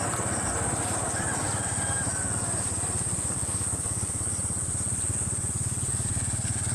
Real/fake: real